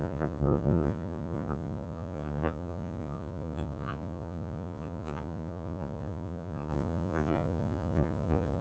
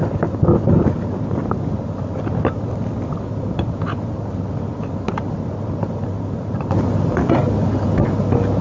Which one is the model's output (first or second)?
first